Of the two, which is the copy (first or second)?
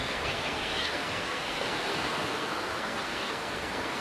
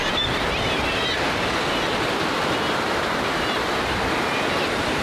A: first